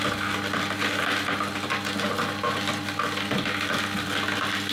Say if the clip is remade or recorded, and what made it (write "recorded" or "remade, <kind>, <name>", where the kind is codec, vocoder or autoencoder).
recorded